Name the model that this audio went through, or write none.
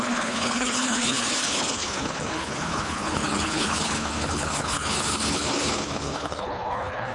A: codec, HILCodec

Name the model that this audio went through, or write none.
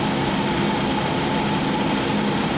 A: none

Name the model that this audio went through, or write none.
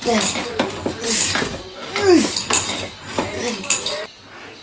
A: none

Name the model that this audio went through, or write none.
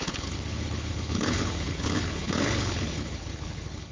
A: codec, HILCodec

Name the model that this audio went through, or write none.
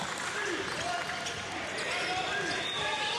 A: none